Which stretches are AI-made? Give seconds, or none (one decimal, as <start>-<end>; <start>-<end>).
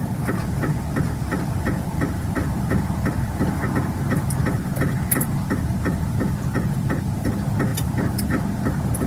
0.0-0.7; 1.3-5.0; 7.7-8.4